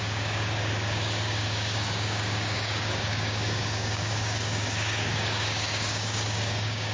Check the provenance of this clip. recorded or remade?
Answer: remade